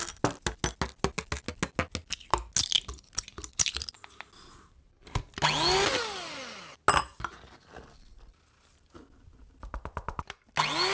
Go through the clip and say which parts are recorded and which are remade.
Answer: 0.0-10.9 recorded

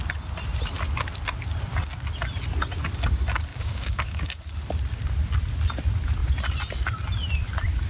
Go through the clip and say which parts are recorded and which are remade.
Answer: 0.0-3.5 recorded; 3.5-4.5 remade; 4.5-7.9 recorded

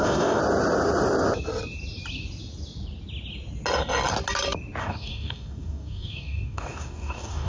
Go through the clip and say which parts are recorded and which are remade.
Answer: 0.0-0.4 remade; 0.4-4.8 recorded; 4.8-7.5 remade

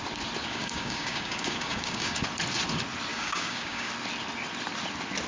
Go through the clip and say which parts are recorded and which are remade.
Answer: 0.0-0.4 recorded; 0.4-2.2 remade; 2.2-3.1 recorded; 3.1-3.9 remade; 3.9-5.3 recorded

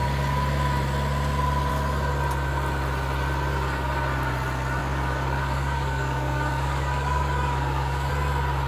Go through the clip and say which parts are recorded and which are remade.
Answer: 0.0-4.8 recorded; 4.8-8.1 remade; 8.1-8.7 recorded

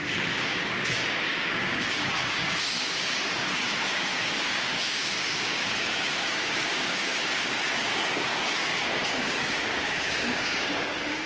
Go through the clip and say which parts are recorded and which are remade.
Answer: 0.0-11.3 remade

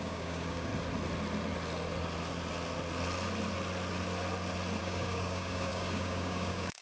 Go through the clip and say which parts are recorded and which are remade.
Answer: 0.0-0.7 remade; 0.7-4.8 recorded; 4.8-6.8 remade

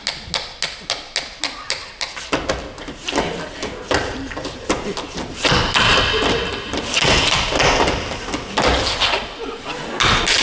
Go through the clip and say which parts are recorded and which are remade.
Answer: 0.0-10.4 recorded